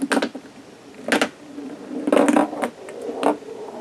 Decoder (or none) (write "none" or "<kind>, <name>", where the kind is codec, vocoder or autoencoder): none